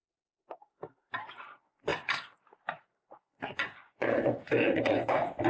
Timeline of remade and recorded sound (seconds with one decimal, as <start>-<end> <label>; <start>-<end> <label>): 0.0-1.3 recorded; 1.3-1.9 remade; 1.9-3.2 recorded; 3.2-5.5 remade

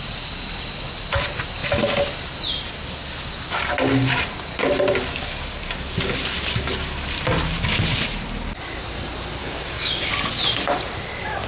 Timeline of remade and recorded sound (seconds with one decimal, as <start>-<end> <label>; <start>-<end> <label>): 0.0-9.4 recorded; 9.4-10.1 remade; 10.1-11.5 recorded

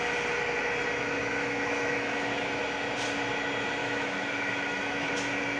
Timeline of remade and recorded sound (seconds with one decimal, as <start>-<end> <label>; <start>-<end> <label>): 0.0-1.2 recorded; 1.2-2.6 remade; 2.6-3.8 recorded; 3.8-5.1 remade; 5.1-5.6 recorded